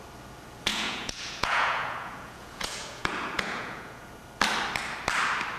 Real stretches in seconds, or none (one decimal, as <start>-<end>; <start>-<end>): 0.0-0.7; 4.1-5.6